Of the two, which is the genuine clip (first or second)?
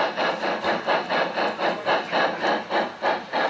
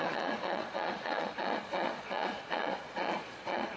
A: first